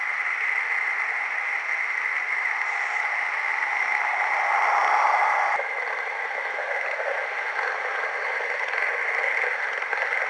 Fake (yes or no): no